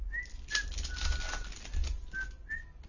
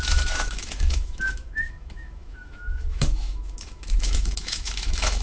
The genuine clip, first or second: first